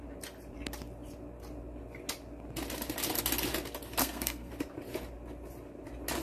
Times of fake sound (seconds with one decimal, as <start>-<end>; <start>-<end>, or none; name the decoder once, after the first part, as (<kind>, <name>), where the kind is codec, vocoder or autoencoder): 4.0-4.5 (codec, SNAC)